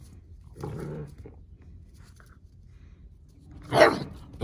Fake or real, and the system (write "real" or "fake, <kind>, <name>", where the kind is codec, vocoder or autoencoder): real